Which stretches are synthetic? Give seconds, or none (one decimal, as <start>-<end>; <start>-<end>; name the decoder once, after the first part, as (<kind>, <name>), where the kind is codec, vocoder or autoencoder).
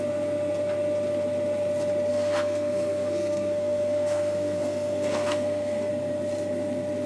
2.1-5.9 (codec, SNAC)